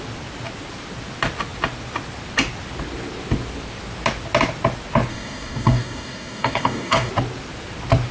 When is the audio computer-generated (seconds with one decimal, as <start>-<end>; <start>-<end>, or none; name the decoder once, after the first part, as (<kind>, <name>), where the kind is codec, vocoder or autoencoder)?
5.1-7.1 (codec, DAC)